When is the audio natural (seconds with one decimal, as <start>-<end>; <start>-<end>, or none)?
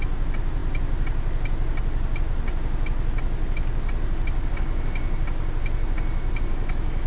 0.0-6.5